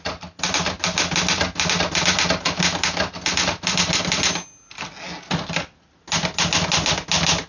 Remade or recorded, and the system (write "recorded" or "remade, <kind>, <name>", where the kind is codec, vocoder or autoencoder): recorded